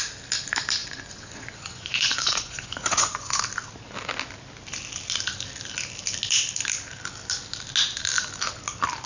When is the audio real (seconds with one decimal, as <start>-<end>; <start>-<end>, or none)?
0.0-0.8; 3.4-9.1